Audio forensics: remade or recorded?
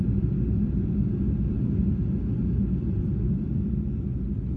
recorded